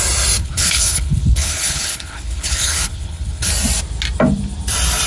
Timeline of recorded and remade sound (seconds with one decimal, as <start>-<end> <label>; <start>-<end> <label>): 0.0-0.4 recorded; 0.4-3.5 remade; 3.5-5.1 recorded